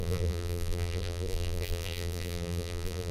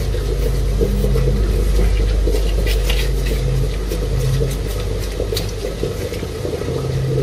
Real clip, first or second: second